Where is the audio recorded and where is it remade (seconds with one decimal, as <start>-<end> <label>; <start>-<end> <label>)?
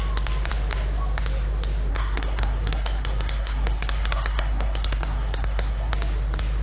0.0-1.9 recorded; 1.9-5.9 remade; 5.9-6.6 recorded